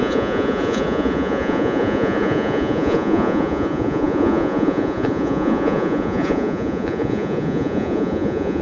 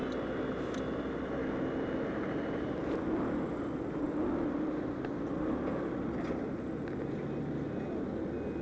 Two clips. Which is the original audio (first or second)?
second